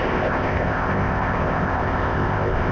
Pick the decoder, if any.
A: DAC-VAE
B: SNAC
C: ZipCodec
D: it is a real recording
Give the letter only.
C